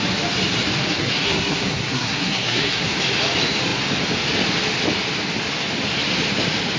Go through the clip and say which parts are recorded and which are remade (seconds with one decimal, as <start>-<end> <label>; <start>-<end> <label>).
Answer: 0.0-1.0 recorded; 1.0-2.9 remade; 2.9-6.8 recorded